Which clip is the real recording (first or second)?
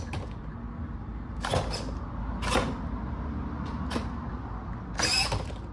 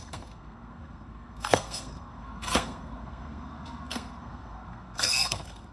first